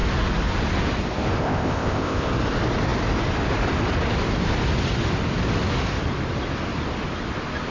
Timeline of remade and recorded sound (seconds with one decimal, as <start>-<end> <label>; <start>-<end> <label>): 0.0-1.4 recorded; 1.4-2.3 remade; 2.3-7.7 recorded